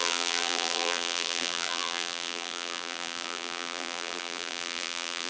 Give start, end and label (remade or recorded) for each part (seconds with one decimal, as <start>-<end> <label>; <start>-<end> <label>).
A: 0.0-5.3 remade